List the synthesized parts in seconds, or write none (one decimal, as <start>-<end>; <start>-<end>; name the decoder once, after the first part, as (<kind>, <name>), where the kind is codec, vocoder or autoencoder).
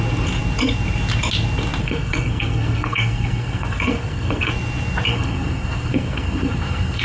1.8-4.5 (codec, SNAC); 5.1-7.0